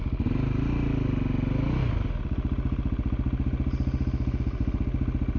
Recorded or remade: recorded